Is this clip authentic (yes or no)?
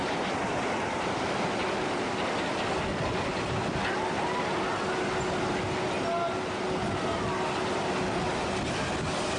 yes